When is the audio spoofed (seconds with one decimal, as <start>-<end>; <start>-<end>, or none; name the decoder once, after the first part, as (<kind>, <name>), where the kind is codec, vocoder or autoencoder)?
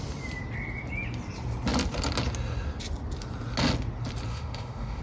4.3-5.0 (autoencoder, DAC-VAE)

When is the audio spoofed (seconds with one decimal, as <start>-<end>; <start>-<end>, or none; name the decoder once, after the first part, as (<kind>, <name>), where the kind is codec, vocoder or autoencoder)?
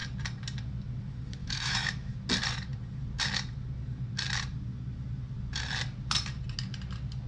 1.4-2.1 (autoencoder, DAC-VAE)